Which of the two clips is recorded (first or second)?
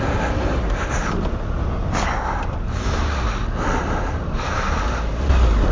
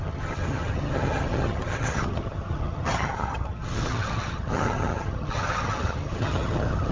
first